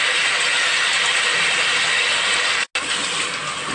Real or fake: real